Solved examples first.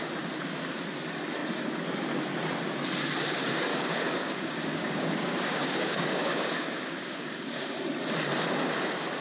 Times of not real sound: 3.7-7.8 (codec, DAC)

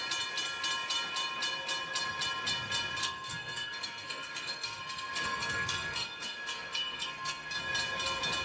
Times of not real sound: 3.0-7.6 (codec, SNAC)

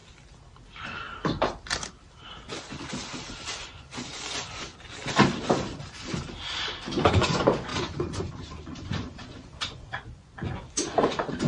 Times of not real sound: 3.6-4.7 (vocoder, Vocos); 7.1-11.5

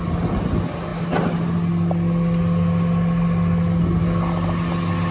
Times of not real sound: none